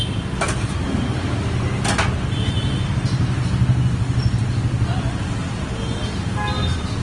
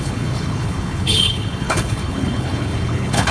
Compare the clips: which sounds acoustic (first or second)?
first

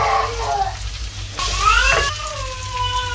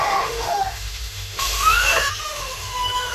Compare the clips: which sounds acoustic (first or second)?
first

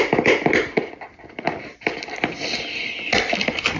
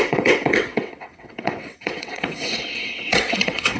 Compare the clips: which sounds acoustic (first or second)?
first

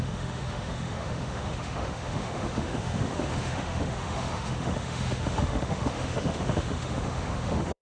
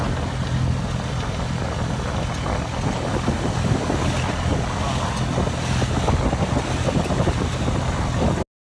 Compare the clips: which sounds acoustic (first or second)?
second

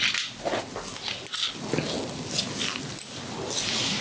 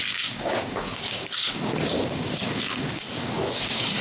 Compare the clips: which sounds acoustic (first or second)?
first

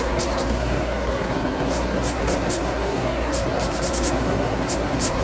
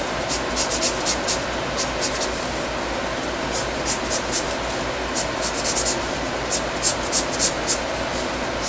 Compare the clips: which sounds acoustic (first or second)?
second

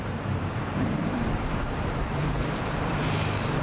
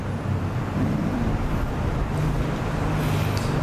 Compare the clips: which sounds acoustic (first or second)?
second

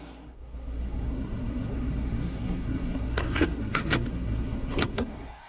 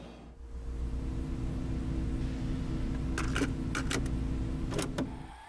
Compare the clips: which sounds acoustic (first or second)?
second